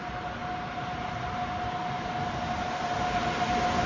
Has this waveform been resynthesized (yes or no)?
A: no